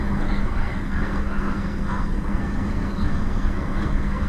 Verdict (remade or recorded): remade